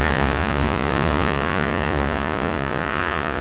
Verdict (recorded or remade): remade